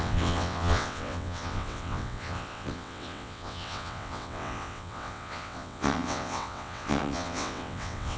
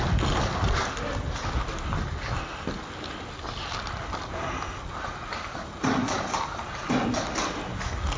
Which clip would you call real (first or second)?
second